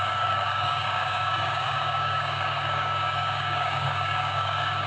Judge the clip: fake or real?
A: fake